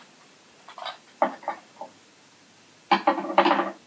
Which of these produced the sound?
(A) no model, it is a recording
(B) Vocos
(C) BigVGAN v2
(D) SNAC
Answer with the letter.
A